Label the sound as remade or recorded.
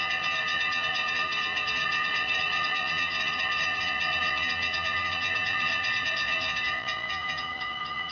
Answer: remade